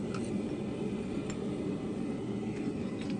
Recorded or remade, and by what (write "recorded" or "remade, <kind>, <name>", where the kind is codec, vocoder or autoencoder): recorded